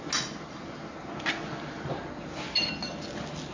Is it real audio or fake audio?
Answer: real